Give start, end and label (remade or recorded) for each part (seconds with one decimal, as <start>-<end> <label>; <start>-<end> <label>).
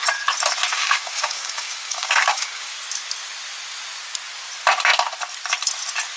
0.0-0.7 recorded; 0.7-2.7 remade; 2.7-6.2 recorded